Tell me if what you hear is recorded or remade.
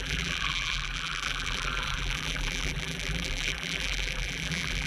remade